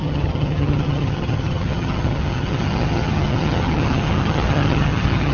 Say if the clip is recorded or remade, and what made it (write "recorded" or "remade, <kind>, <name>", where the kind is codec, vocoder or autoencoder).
remade, vocoder, HiFi-GAN